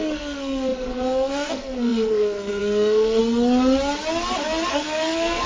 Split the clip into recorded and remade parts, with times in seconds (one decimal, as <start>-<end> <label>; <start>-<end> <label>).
0.0-3.2 remade; 3.2-4.7 recorded; 4.7-5.5 remade